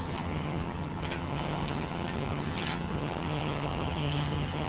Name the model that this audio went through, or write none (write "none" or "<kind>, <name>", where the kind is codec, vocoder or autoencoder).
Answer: vocoder, HiFi-GAN